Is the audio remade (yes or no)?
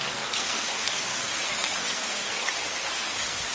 yes